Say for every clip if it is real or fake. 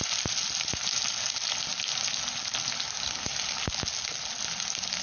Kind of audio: real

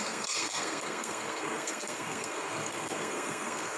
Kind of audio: fake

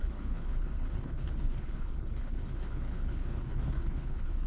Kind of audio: fake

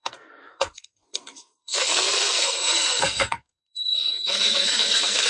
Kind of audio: fake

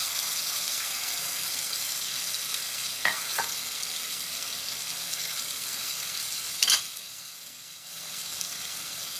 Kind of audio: fake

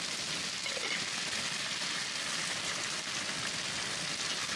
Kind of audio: real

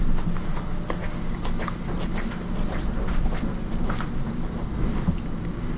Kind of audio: real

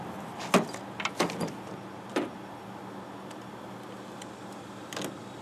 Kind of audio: real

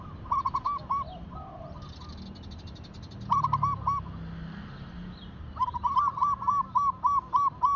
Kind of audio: real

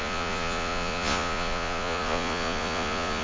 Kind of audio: fake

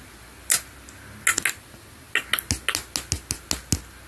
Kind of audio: real